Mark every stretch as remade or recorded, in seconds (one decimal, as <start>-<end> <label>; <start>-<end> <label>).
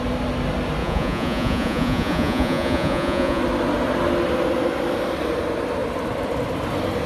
0.0-0.8 recorded; 0.8-3.4 remade; 3.4-7.1 recorded